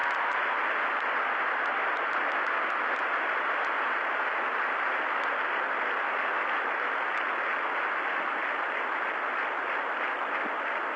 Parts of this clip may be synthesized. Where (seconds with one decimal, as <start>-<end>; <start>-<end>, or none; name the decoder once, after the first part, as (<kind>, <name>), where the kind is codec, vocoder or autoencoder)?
none